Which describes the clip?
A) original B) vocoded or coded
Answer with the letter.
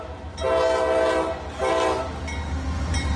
A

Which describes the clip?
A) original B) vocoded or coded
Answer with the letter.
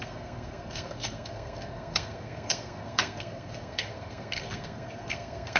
B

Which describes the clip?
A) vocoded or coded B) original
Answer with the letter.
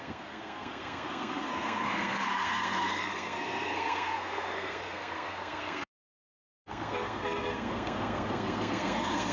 A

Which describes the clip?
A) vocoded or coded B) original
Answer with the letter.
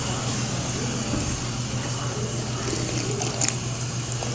B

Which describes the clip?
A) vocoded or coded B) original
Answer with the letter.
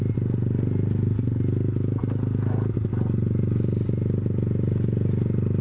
B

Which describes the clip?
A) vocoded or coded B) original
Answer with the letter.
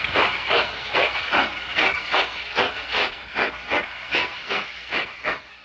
A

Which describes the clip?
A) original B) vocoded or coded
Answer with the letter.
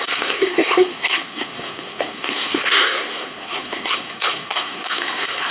B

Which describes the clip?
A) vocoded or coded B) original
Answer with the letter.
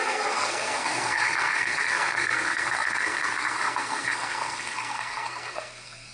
A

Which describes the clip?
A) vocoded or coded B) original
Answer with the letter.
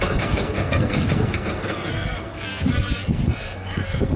A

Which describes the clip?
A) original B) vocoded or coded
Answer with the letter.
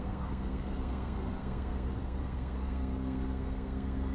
B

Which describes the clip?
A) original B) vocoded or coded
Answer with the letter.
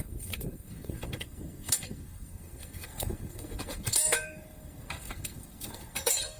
B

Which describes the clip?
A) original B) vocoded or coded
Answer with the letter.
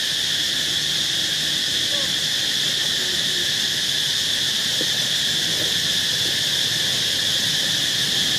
A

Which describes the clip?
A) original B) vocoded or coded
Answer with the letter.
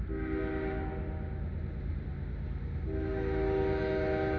A